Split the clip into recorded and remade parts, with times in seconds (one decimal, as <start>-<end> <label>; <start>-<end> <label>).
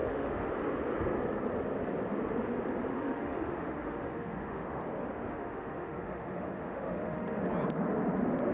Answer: 0.0-0.5 remade; 0.5-2.9 recorded; 2.9-4.8 remade; 4.8-5.3 recorded; 5.3-7.5 remade; 7.5-8.5 recorded